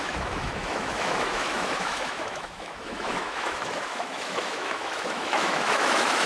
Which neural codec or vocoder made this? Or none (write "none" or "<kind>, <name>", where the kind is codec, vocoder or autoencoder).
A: autoencoder, DAC-VAE